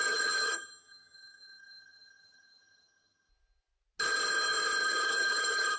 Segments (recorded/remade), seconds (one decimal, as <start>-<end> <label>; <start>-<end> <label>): 0.0-3.3 remade; 3.3-4.8 recorded; 4.8-5.8 remade